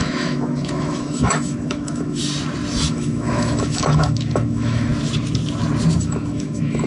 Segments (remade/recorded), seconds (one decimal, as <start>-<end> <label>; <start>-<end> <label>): 0.0-2.2 remade; 2.2-2.9 recorded; 2.9-4.9 remade; 4.9-6.0 recorded; 6.0-6.9 remade